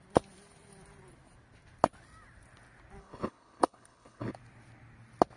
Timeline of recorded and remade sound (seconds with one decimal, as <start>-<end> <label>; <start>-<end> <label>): 0.0-3.0 recorded; 3.0-4.3 remade; 4.3-5.4 recorded